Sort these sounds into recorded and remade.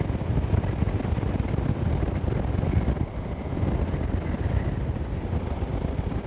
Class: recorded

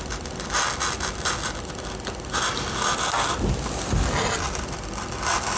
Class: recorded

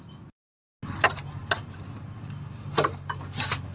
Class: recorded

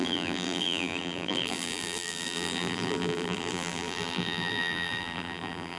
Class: remade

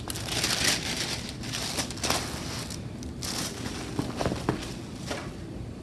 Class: recorded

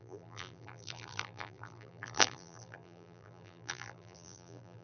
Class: remade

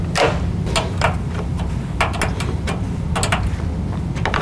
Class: recorded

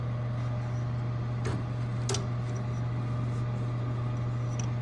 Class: recorded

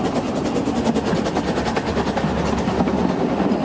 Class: recorded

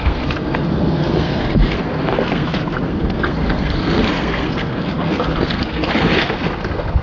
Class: remade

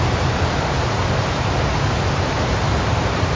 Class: recorded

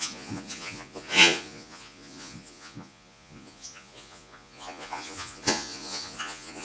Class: remade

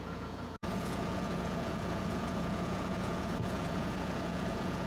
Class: remade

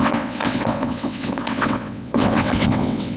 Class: remade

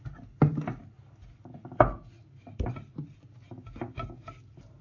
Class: recorded